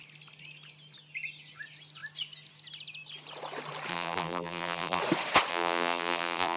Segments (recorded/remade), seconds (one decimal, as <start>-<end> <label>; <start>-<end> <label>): 0.0-3.9 recorded; 3.9-5.0 remade; 5.0-5.5 recorded; 5.5-6.6 remade